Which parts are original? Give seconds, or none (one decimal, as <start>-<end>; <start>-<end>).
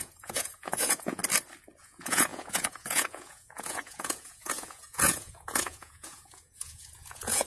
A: 1.2-1.8